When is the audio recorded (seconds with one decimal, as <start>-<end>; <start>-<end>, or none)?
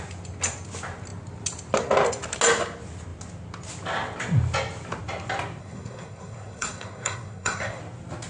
0.0-5.6; 7.8-8.3